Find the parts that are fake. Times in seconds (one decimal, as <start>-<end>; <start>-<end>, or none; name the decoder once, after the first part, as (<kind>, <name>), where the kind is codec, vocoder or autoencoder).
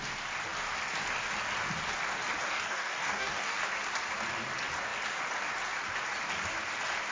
2.4-3.6 (codec, DAC)